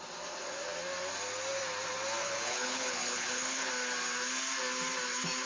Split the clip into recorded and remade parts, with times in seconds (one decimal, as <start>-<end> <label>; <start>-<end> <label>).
0.0-2.2 recorded; 2.2-3.7 remade; 3.7-5.5 recorded